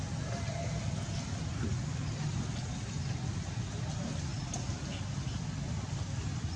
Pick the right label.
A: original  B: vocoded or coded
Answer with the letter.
A